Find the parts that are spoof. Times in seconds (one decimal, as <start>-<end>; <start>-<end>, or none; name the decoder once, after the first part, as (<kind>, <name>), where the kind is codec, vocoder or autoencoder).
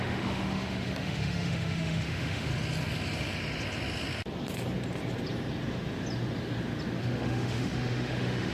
0.0-2.5 (autoencoder, DAC-VAE); 7.0-8.5